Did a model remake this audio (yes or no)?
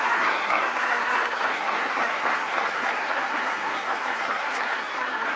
yes